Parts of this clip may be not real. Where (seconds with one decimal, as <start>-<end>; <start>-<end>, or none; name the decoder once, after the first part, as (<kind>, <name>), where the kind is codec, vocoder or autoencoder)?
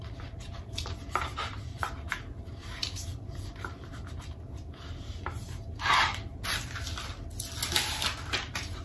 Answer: 0.0-6.3 (vocoder, BigVGAN v2); 8.3-8.8